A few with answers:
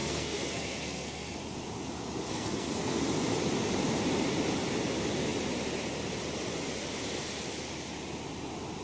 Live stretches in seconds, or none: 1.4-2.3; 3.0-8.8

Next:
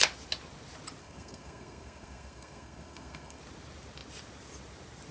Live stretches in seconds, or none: 0.0-1.0; 3.4-5.1

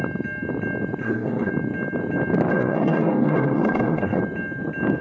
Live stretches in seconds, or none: 0.0-1.0; 1.5-2.5; 4.2-5.0

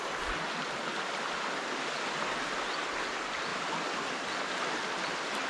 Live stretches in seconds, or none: 0.0-5.5

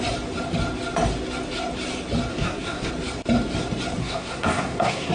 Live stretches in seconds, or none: 0.0-2.3; 2.9-4.0

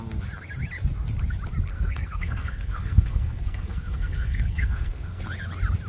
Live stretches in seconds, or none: 0.0-1.7; 5.2-5.9

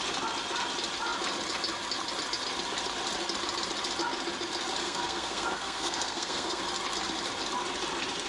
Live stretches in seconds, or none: 0.0-4.8; 6.6-8.3

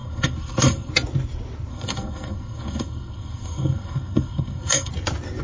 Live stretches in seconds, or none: 0.9-1.7; 4.9-5.4